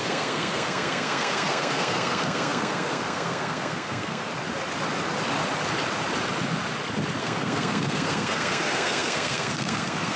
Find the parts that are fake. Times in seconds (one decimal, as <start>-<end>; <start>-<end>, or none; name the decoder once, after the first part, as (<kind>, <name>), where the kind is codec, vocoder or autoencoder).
0.0-4.3 (codec, SNAC); 7.2-10.2